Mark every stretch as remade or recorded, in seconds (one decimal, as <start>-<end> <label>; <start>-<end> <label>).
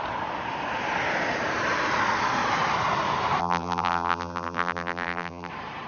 0.0-3.4 recorded; 3.4-5.5 remade; 5.5-5.9 recorded